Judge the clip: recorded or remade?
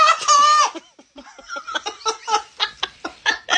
recorded